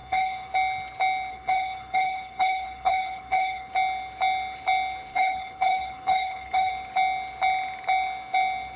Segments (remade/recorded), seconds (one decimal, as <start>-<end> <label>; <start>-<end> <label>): 0.0-0.5 remade; 0.5-1.3 recorded; 1.3-3.7 remade; 3.7-5.1 recorded; 5.1-6.7 remade; 6.7-8.8 recorded